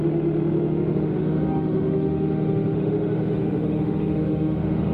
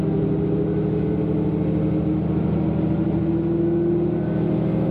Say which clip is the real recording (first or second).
second